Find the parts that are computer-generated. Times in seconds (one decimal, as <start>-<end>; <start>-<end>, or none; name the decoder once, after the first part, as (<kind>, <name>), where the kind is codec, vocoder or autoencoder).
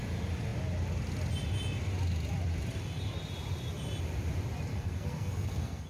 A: 4.7-5.9 (codec, SNAC)